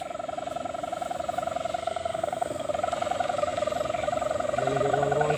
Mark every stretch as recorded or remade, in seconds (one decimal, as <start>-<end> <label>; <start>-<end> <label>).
0.0-1.8 recorded; 1.8-2.7 remade; 2.7-5.4 recorded

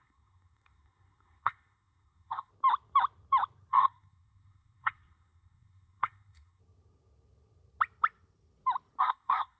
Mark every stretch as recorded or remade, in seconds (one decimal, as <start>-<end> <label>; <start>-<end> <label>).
0.0-2.5 remade; 2.5-3.7 recorded; 3.7-6.6 remade; 6.6-9.0 recorded; 9.0-9.6 remade

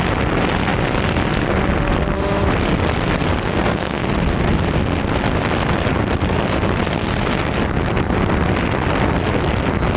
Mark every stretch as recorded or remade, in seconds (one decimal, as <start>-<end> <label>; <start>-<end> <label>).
0.0-3.4 recorded; 3.4-4.1 remade; 4.1-10.0 recorded

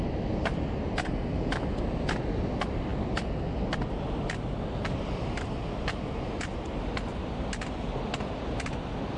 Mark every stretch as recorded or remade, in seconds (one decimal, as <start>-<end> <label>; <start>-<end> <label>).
0.0-9.2 recorded

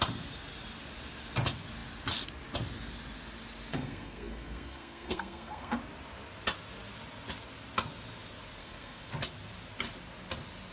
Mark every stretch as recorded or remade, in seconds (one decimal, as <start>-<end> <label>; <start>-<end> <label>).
0.0-3.7 recorded; 3.7-5.8 remade; 5.8-8.6 recorded; 8.6-9.1 remade; 9.1-10.7 recorded

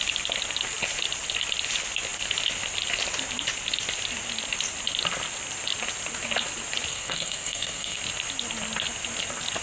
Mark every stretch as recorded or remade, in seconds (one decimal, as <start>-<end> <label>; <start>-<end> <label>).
0.0-6.9 recorded; 6.9-8.0 remade; 8.0-9.6 recorded